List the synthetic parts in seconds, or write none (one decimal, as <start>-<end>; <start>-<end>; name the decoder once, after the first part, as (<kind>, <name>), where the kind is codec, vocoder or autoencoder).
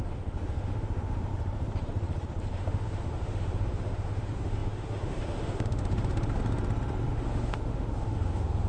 0.0-1.3 (autoencoder, DAC-VAE); 2.5-6.4; 7.1-8.7